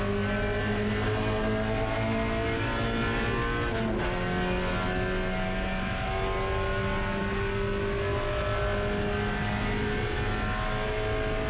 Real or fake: real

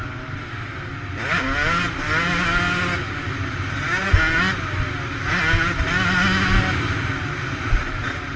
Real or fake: real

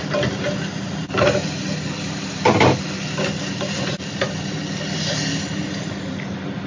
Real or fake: real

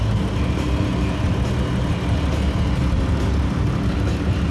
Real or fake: real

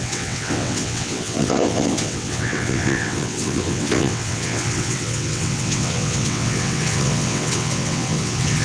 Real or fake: fake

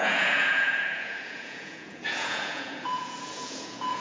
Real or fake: fake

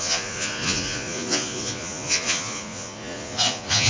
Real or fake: fake